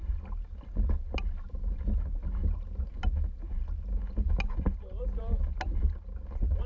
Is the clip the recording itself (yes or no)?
yes